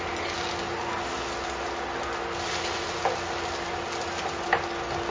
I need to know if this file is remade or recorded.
recorded